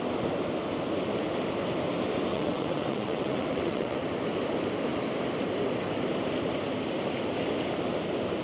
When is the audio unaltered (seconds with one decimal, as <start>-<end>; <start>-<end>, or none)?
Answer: 0.0-2.3; 4.0-8.4